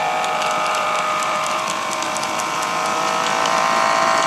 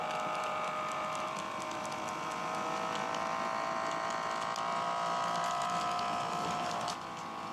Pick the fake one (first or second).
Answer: first